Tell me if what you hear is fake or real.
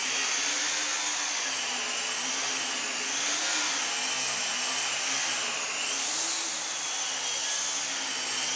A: real